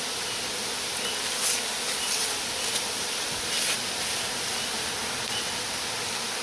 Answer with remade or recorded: recorded